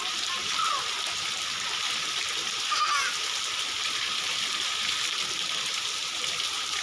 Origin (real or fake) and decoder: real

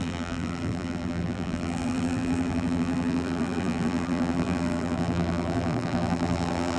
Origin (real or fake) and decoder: fake, vocoder, BigVGAN v2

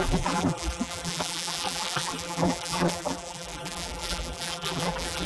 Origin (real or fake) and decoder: fake, vocoder, BigVGAN v2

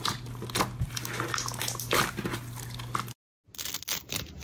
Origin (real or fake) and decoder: real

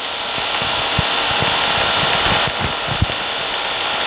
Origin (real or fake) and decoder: real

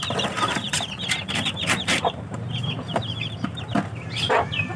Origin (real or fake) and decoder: fake, vocoder, BigVGAN v2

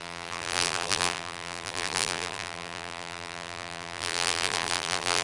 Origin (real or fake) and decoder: fake, vocoder, BigVGAN v2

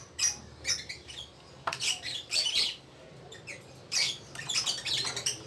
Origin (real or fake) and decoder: fake, vocoder, BigVGAN v2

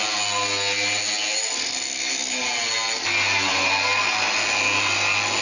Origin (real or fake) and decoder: real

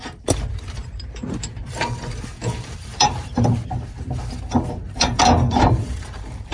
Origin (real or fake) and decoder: fake, vocoder, BigVGAN v2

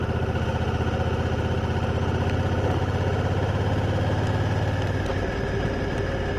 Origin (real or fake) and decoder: real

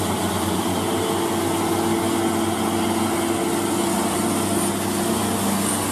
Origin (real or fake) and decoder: real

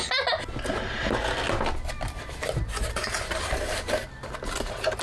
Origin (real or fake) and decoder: real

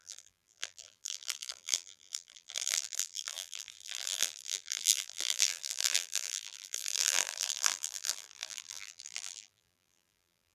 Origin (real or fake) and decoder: fake, vocoder, BigVGAN v2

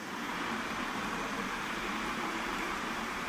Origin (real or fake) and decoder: fake, vocoder, BigVGAN v2